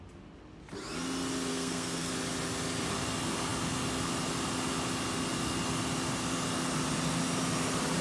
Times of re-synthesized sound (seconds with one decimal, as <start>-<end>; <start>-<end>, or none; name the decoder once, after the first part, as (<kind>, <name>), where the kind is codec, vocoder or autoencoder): 1.5-2.1 (codec, SNAC)